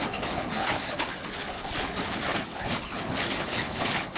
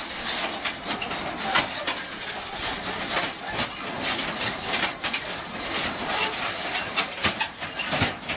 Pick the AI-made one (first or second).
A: first